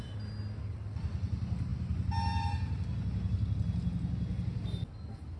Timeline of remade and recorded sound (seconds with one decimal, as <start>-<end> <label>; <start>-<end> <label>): 0.0-5.4 recorded